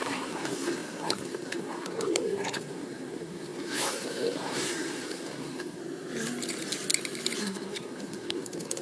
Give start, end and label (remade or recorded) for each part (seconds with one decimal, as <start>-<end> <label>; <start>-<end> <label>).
0.0-5.8 remade; 5.8-7.4 recorded; 7.4-8.8 remade